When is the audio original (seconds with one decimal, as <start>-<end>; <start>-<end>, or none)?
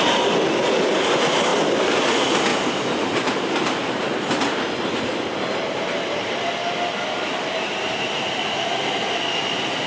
0.0-2.5; 6.5-7.2; 8.2-9.9